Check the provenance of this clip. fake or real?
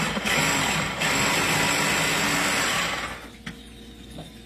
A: real